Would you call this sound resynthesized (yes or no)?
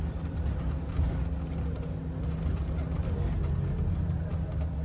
no